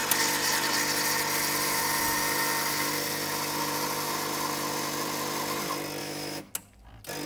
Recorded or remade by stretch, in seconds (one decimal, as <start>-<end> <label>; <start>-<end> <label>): 0.0-6.0 recorded; 6.0-6.5 remade; 6.5-7.3 recorded